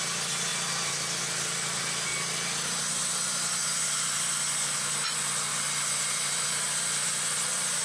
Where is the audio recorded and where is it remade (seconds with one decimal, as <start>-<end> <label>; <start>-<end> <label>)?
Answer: 0.0-7.8 recorded